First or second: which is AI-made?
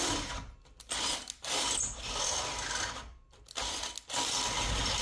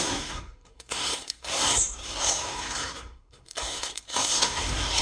second